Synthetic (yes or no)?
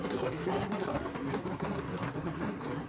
yes